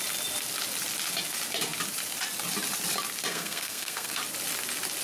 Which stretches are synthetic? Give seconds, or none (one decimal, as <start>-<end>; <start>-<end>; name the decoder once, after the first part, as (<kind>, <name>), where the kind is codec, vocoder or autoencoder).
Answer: 3.3-4.2 (codec, SNAC)